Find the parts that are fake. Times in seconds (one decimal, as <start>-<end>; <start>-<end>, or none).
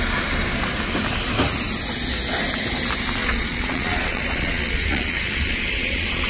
3.2-6.3